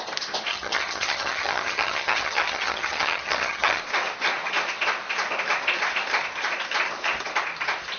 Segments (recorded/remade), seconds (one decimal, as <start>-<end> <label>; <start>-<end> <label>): 0.0-0.5 recorded; 0.5-3.8 remade; 3.8-8.0 recorded